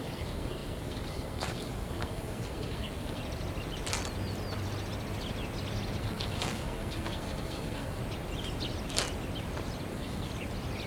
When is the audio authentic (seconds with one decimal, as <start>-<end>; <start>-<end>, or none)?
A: 3.2-6.0; 8.0-9.9; 10.3-10.9